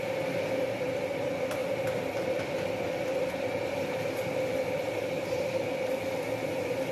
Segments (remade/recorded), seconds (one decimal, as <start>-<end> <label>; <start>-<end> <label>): 0.0-6.9 recorded